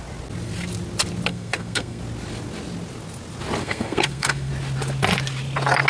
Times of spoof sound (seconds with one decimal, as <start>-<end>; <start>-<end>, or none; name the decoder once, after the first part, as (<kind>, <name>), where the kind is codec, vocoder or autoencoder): 1.3-2.0 (codec, SNAC); 3.6-4.5